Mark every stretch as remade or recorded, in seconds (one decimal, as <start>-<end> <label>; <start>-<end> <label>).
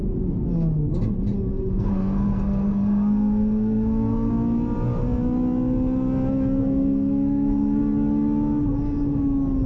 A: 0.0-1.5 recorded; 1.5-4.3 remade; 4.3-6.6 recorded; 6.6-7.8 remade; 7.8-9.7 recorded